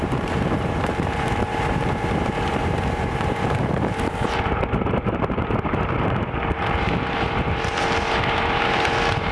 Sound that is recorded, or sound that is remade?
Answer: remade